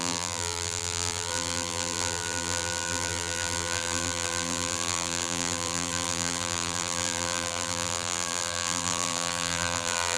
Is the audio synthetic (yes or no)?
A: yes